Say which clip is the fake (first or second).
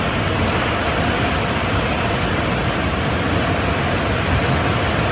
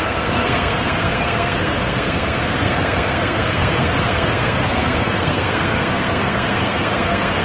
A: second